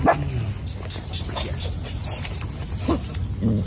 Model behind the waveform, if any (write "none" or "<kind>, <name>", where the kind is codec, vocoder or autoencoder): none